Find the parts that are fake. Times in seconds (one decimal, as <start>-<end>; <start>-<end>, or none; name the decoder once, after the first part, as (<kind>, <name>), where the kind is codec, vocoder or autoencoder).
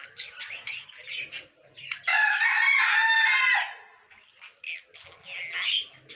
none